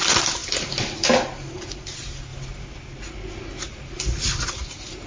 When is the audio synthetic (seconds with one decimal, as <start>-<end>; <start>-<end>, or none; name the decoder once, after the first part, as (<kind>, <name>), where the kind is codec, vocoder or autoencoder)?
none